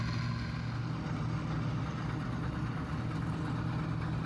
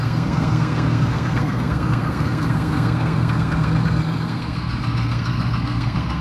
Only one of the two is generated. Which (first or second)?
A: second